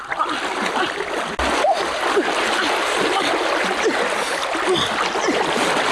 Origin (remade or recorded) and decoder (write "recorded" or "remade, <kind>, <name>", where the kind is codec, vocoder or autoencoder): recorded